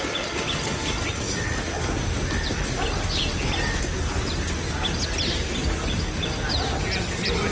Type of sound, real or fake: real